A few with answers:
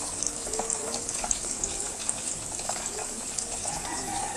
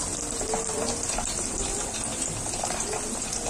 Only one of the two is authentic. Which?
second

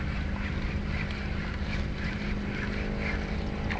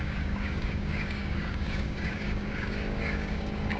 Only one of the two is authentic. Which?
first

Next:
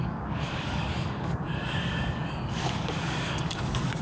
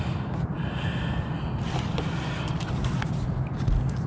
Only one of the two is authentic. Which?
second